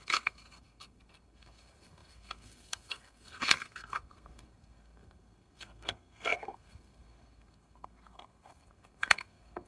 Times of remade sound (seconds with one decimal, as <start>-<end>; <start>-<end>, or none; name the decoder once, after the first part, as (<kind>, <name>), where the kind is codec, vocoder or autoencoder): 0.0-9.7 (codec, SNAC)